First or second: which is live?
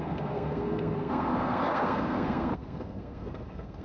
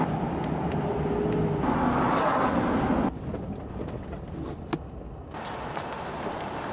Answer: second